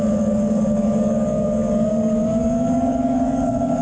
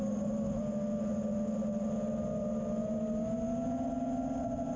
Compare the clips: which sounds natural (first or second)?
second